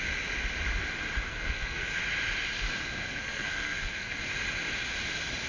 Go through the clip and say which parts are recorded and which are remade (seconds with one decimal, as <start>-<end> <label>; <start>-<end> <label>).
0.0-1.3 recorded; 1.3-2.0 remade; 2.0-2.8 recorded; 2.8-4.2 remade; 4.2-5.5 recorded